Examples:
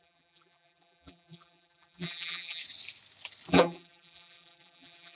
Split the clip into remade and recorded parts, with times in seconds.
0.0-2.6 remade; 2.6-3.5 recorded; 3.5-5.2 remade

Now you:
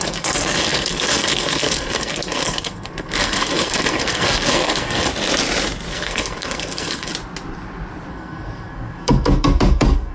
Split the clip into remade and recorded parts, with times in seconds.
0.0-5.1 remade; 5.1-5.9 recorded; 5.9-7.1 remade; 7.1-8.1 recorded; 8.1-10.1 remade

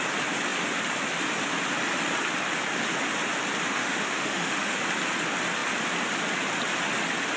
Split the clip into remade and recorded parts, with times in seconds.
0.0-3.7 recorded; 3.7-4.8 remade; 4.8-7.4 recorded

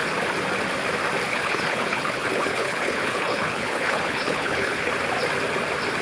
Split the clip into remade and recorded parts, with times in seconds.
0.0-1.3 recorded; 1.3-4.9 remade; 4.9-6.0 recorded

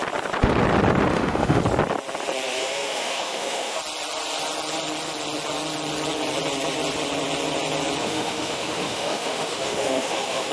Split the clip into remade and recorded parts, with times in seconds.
0.0-1.1 recorded; 1.1-1.6 remade; 1.6-2.6 recorded; 2.6-3.8 remade; 3.8-8.0 recorded; 8.0-10.5 remade

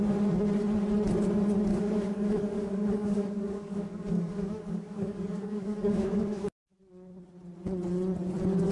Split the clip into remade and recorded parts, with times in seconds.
0.0-1.7 recorded; 1.7-6.6 remade; 6.6-8.7 recorded

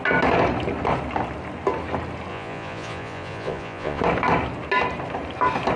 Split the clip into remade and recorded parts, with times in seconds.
0.0-2.3 recorded; 2.3-4.0 remade; 4.0-5.8 recorded